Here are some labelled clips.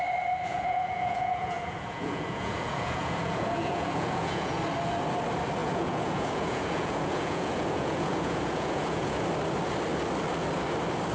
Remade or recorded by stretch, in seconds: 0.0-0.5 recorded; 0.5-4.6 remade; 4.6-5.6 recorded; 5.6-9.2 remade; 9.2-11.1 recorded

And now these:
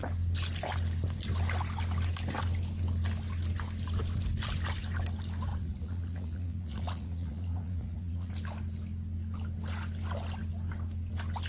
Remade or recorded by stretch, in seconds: 0.0-5.5 recorded; 5.5-8.3 remade; 8.3-11.5 recorded

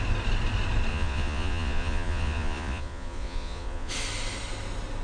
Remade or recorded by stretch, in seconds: 0.0-0.9 recorded; 0.9-3.9 remade; 3.9-5.0 recorded